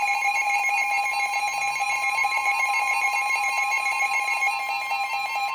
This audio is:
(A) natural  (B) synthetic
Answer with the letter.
B